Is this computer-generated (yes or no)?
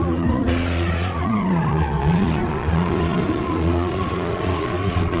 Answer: yes